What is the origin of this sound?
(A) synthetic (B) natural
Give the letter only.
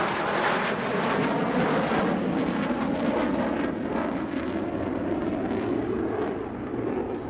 B